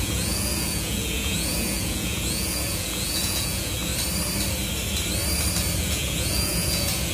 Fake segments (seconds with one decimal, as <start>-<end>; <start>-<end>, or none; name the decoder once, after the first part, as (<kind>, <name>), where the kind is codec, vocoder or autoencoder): 0.0-3.9 (vocoder, Vocos); 5.8-7.1